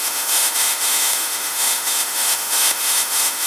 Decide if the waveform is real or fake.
fake